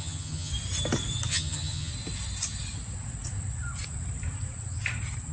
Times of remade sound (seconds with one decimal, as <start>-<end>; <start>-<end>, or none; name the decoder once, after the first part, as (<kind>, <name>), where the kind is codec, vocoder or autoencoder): 0.0-0.5 (vocoder, HiFi-GAN); 1.3-1.9